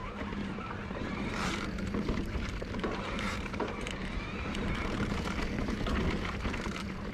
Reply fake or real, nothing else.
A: fake